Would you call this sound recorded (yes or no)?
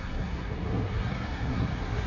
no